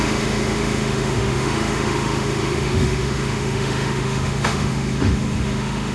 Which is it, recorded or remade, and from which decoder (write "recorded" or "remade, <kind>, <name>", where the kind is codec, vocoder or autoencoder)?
remade, autoencoder, DAC-VAE